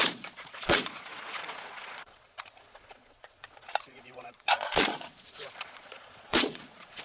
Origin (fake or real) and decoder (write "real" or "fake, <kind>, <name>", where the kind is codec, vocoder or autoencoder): fake, vocoder, Vocos